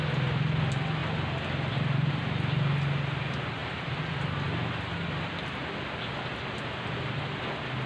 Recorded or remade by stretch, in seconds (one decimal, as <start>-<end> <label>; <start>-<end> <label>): 0.0-3.6 recorded; 3.6-4.1 remade; 4.1-6.3 recorded; 6.3-7.2 remade; 7.2-7.9 recorded

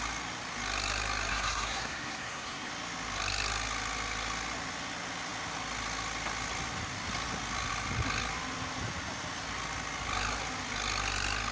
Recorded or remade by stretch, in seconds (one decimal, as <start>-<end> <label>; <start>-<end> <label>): 0.0-1.3 recorded; 1.3-2.7 remade; 2.7-11.5 recorded

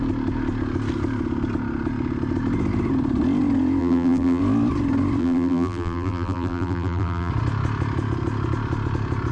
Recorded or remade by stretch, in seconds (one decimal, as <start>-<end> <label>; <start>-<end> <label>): 0.0-3.8 recorded; 3.8-4.4 remade; 4.4-5.2 recorded; 5.2-7.3 remade; 7.3-9.3 recorded

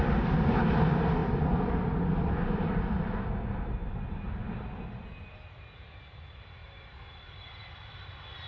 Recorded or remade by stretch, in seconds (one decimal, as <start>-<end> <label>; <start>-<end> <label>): 0.0-8.5 recorded

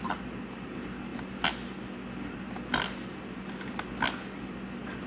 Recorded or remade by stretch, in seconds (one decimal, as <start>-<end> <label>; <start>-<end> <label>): 0.0-5.1 recorded

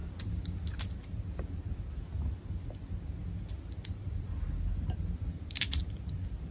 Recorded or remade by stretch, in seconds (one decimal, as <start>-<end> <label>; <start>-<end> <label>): 0.0-6.5 recorded

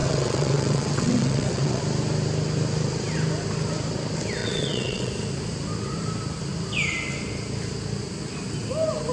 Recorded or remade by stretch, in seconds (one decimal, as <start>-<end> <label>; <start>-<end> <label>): 0.0-1.8 remade; 1.8-4.4 recorded; 4.4-5.1 remade; 5.1-9.1 recorded

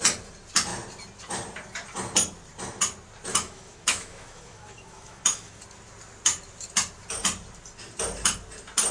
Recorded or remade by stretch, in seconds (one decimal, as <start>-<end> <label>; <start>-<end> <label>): 0.0-3.3 recorded; 3.3-5.6 remade; 5.6-8.9 recorded